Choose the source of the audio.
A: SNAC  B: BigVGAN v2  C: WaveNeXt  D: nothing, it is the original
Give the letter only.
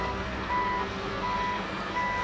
A